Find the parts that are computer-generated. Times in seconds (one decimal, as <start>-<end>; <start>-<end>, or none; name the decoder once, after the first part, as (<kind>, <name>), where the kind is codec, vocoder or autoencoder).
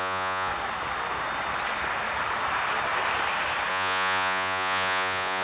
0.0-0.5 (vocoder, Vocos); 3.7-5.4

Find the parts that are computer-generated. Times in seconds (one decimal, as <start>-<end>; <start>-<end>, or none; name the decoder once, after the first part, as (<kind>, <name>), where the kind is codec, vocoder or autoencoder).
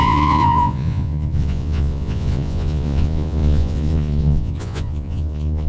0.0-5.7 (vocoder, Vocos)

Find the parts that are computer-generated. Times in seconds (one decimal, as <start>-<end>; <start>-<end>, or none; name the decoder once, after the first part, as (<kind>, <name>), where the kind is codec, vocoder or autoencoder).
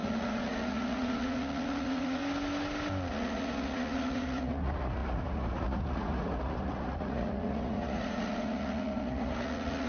0.0-2.2 (vocoder, Vocos); 3.1-9.9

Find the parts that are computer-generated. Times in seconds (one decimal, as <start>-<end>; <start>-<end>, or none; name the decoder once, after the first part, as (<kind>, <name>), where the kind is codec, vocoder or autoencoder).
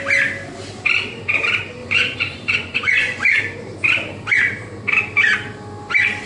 1.8-3.4 (vocoder, Vocos)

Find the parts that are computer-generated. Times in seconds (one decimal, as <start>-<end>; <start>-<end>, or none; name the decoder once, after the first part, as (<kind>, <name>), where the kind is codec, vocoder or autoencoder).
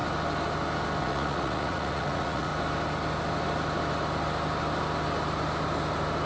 1.0-2.5 (vocoder, Vocos)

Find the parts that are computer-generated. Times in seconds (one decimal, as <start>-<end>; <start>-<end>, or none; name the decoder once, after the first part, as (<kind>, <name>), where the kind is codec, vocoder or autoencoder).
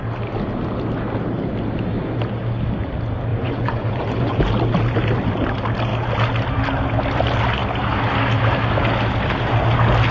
3.3-4.4 (vocoder, Vocos)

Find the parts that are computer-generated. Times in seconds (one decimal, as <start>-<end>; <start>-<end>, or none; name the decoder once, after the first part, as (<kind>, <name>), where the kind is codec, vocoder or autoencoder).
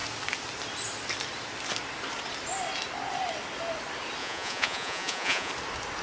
4.2-5.5 (vocoder, Vocos)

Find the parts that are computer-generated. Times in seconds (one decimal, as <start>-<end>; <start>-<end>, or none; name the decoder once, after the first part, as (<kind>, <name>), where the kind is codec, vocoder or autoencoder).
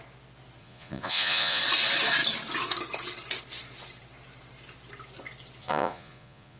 0.6-1.6 (vocoder, Vocos); 5.6-6.6